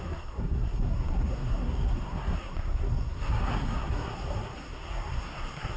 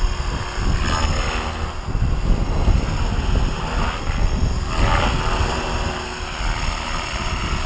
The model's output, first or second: first